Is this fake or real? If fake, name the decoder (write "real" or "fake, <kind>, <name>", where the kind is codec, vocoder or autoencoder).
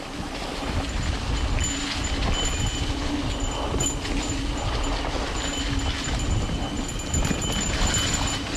real